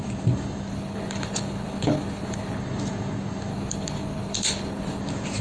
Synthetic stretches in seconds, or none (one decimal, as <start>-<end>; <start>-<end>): 0.7-2.6; 3.5-5.0